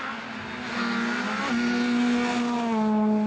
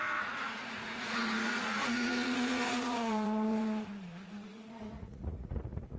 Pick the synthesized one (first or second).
second